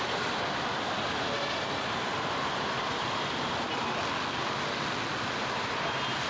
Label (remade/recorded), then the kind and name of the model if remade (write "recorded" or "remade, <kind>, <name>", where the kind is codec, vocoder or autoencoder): recorded